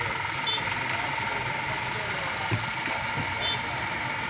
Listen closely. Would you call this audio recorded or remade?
recorded